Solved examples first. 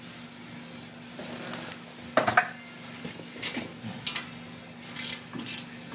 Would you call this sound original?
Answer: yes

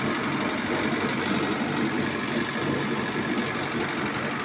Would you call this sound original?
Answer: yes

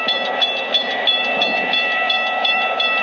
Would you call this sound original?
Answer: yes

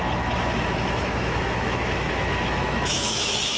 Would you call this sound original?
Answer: no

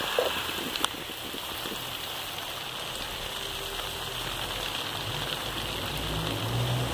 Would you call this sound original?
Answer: yes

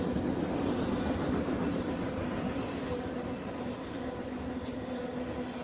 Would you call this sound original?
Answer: yes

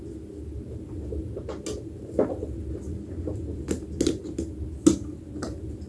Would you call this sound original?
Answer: yes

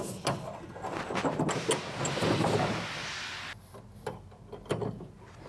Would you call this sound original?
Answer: yes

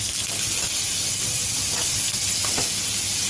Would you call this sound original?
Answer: yes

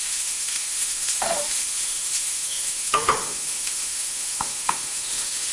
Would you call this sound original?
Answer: no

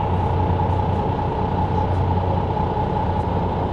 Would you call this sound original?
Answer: yes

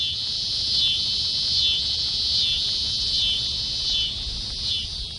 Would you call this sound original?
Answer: yes